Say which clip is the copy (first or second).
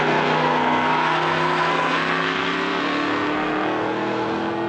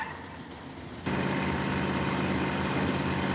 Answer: first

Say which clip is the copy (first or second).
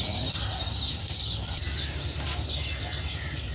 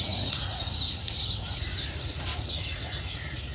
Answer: second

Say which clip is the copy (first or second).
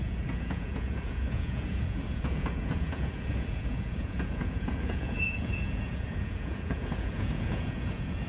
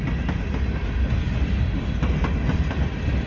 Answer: first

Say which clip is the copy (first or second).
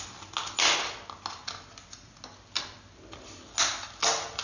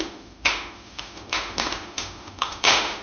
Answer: second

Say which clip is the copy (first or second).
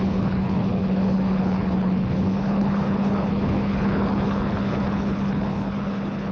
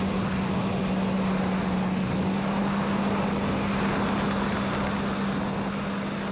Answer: first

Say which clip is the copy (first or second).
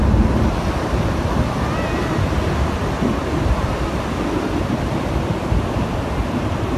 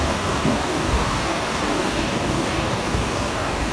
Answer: second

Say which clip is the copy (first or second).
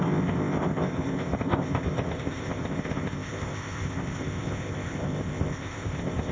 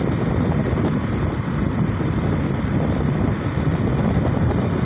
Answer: first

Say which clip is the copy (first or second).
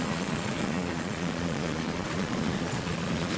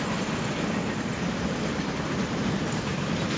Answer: first